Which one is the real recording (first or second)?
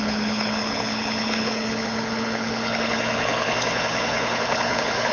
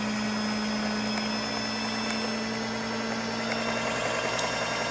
second